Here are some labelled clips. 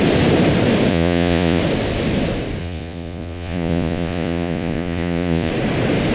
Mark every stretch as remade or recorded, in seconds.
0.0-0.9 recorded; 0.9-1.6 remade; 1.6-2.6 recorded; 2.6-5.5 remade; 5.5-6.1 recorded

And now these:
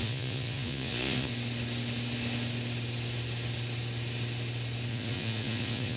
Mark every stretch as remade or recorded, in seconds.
0.0-1.3 remade; 1.3-4.9 recorded; 4.9-6.0 remade